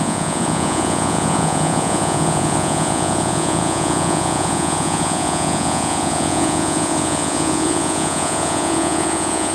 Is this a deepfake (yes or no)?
yes